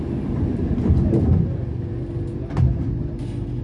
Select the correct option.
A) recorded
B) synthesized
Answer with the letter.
A